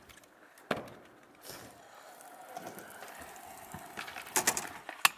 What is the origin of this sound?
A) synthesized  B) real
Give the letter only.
B